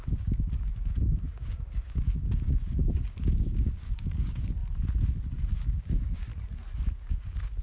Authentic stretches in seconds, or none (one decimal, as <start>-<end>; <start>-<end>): 4.6-5.5; 6.3-6.9